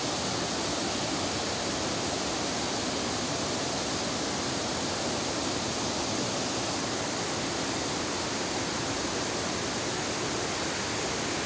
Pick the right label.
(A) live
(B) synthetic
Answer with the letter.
A